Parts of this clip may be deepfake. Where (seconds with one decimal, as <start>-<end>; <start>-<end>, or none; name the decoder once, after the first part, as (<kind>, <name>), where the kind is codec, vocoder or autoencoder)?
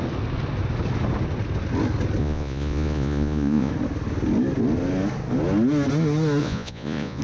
2.2-3.7 (vocoder, Vocos); 6.4-7.2